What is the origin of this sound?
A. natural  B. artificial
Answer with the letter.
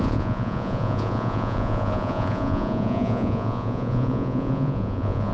B